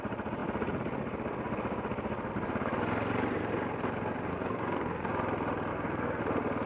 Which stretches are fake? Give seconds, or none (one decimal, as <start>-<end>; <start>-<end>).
4.3-5.1; 5.7-6.2